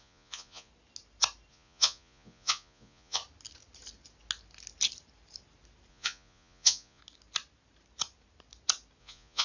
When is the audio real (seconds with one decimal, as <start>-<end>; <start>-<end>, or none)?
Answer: 0.7-1.5; 3.2-5.9; 7.0-9.0